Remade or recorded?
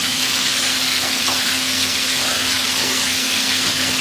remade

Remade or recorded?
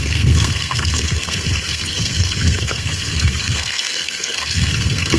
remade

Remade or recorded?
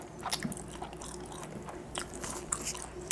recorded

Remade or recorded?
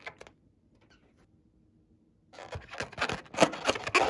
recorded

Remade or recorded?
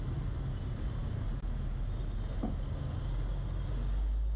recorded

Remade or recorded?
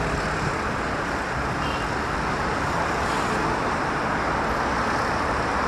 recorded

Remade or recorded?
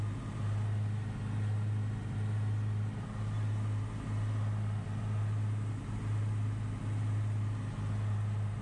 recorded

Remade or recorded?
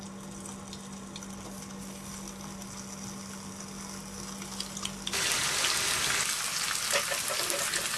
recorded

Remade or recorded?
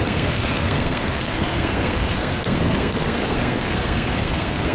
remade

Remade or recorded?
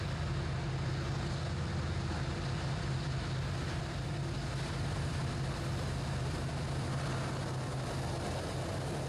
recorded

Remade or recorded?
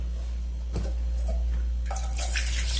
recorded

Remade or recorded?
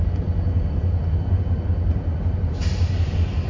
recorded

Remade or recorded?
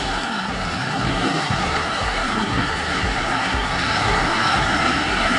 remade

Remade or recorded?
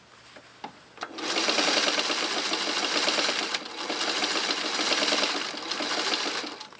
recorded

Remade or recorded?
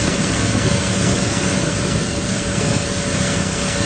remade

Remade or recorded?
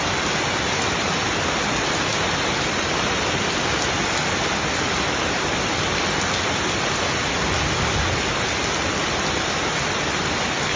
recorded